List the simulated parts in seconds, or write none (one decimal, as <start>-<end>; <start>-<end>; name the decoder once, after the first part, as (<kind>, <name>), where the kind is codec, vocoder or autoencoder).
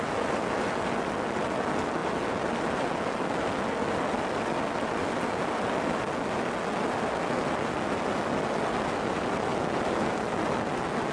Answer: none